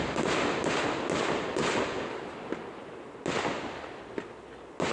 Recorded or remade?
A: recorded